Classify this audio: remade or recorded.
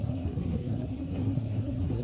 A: remade